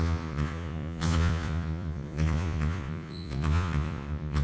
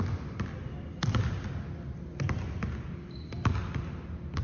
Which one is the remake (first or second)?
first